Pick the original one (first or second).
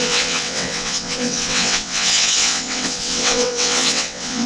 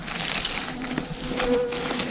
second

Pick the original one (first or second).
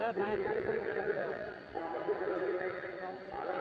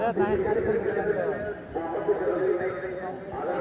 second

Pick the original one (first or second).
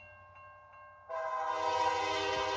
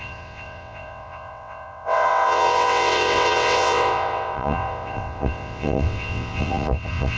first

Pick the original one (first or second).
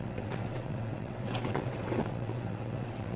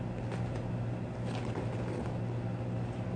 second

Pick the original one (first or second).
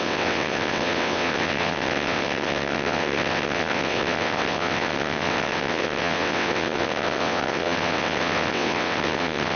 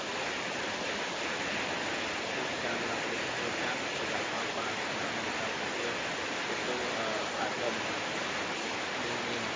second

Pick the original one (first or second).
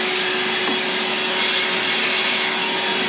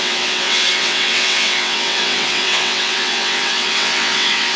first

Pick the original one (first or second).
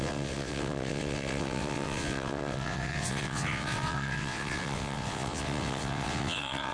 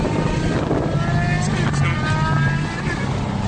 second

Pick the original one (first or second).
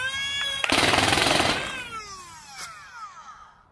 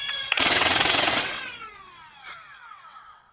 first